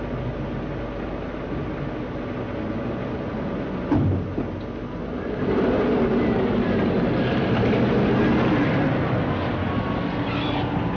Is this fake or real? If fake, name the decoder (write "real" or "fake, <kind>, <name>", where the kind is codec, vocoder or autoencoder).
real